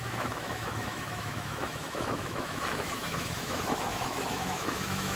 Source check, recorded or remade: remade